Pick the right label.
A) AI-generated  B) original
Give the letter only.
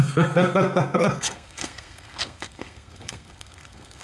A